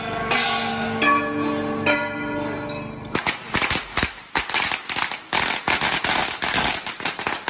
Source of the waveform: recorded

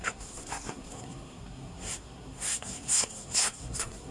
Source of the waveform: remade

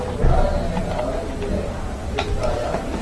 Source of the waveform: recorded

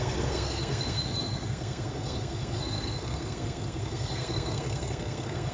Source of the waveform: remade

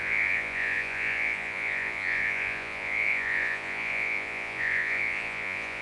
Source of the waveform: remade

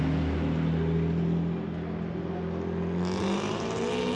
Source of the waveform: recorded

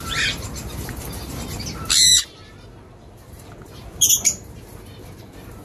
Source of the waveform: remade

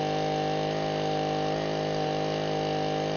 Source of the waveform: recorded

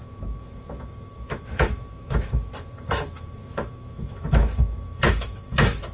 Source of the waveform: remade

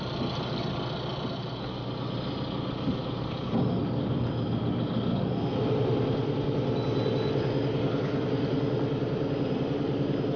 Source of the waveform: recorded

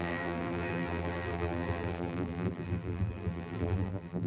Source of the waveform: remade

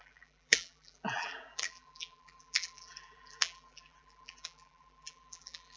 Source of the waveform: remade